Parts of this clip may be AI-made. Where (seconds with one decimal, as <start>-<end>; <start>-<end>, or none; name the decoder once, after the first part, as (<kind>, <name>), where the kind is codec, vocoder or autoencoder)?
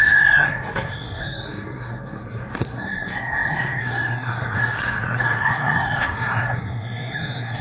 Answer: 0.0-7.6 (codec, SNAC)